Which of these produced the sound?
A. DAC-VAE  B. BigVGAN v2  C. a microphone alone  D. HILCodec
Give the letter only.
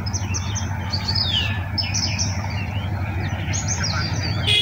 C